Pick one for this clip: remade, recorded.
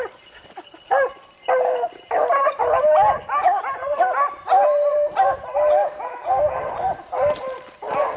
recorded